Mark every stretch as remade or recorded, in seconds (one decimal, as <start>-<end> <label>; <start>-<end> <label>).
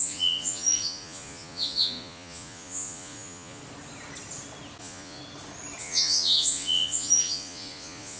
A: 0.0-3.6 remade; 3.6-4.8 recorded; 4.8-5.2 remade; 5.2-5.8 recorded; 5.8-8.2 remade